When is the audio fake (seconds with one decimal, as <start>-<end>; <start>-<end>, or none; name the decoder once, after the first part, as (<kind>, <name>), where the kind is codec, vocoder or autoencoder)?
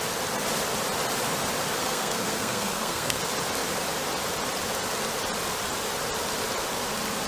1.8-3.2 (codec, SNAC)